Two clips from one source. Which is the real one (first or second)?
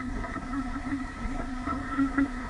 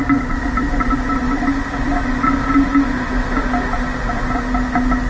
second